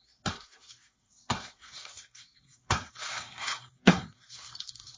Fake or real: fake